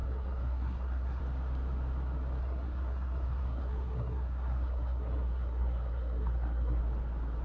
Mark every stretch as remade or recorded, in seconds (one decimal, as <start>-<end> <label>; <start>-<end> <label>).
0.0-1.2 remade; 1.2-2.4 recorded; 2.4-6.8 remade; 6.8-7.4 recorded